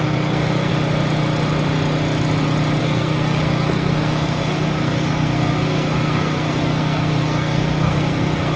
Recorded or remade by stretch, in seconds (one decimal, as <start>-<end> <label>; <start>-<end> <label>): 0.0-0.7 remade; 0.7-2.8 recorded; 2.8-8.6 remade